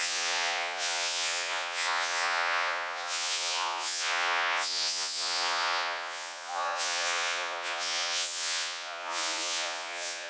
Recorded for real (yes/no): no